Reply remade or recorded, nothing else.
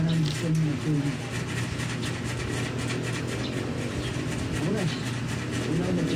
recorded